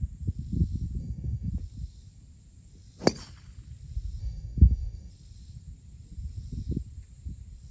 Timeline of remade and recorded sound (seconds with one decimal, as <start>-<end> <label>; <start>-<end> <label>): 0.0-1.0 recorded; 1.0-1.5 remade; 1.5-4.2 recorded; 4.2-5.1 remade; 5.1-7.7 recorded